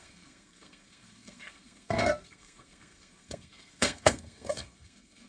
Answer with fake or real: fake